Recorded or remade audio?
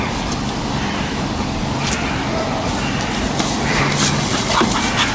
recorded